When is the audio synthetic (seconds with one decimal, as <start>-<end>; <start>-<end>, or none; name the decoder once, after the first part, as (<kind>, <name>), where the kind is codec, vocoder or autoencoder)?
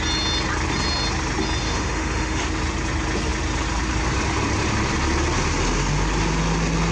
1.6-2.4 (autoencoder, DAC-VAE)